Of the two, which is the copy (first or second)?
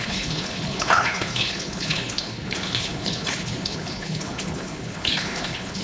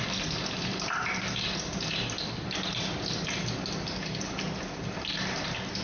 first